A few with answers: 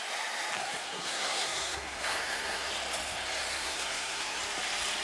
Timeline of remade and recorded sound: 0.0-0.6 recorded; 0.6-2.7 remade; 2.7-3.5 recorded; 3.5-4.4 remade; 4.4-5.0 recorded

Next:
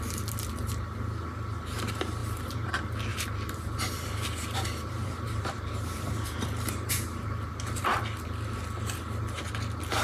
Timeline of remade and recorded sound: 0.0-2.2 recorded; 2.2-2.7 remade; 2.7-3.1 recorded; 3.1-8.0 remade; 8.0-10.0 recorded

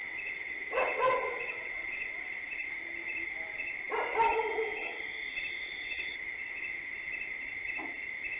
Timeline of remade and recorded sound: 0.0-2.2 remade; 2.2-4.3 recorded; 4.3-5.0 remade; 5.0-5.6 recorded; 5.6-6.6 remade; 6.6-8.4 recorded

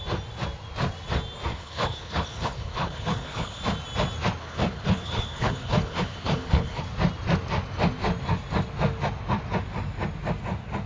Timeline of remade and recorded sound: 0.0-1.5 recorded; 1.5-3.6 remade; 3.6-4.4 recorded; 4.4-6.8 remade; 6.8-10.9 recorded

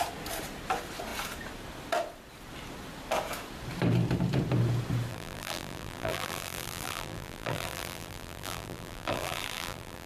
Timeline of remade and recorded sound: 0.0-5.1 recorded; 5.1-10.1 remade

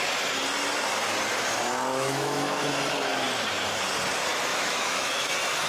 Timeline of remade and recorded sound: 0.0-1.9 recorded; 1.9-2.6 remade; 2.6-4.5 recorded; 4.5-5.3 remade; 5.3-5.7 recorded

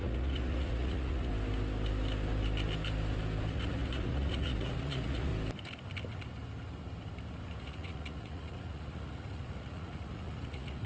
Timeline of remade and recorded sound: 0.0-1.3 remade; 1.3-3.5 recorded; 3.5-5.3 remade; 5.3-7.6 recorded; 7.6-10.9 remade